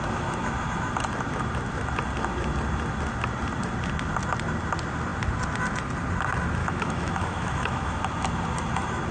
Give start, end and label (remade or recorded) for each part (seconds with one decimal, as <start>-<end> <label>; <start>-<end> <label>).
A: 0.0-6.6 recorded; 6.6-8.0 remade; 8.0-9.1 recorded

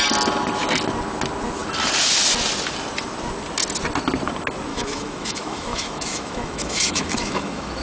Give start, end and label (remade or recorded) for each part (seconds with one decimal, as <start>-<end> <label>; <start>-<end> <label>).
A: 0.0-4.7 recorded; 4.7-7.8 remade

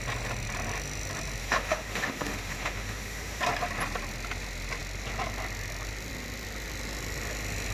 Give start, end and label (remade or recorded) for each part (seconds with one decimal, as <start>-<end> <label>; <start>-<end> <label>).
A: 0.0-1.4 recorded; 1.4-3.4 remade; 3.4-7.7 recorded

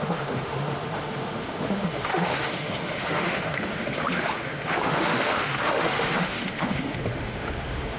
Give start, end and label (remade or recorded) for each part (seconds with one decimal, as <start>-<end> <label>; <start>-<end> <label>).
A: 0.0-8.0 remade

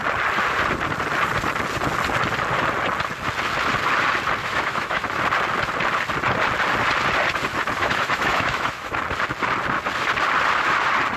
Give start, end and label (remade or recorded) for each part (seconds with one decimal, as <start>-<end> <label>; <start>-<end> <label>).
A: 0.0-4.4 recorded; 4.4-5.2 remade; 5.2-7.8 recorded; 7.8-9.0 remade; 9.0-11.2 recorded

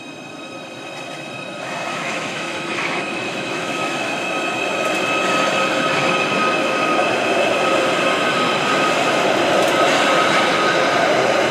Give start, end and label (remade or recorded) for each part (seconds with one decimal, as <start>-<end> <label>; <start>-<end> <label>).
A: 0.0-1.9 recorded; 1.9-4.1 remade; 4.1-11.5 recorded

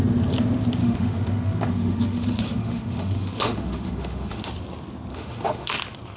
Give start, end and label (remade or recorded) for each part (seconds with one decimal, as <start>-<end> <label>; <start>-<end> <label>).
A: 0.0-0.8 recorded; 0.8-4.5 remade; 4.5-5.1 recorded; 5.1-5.8 remade; 5.8-6.2 recorded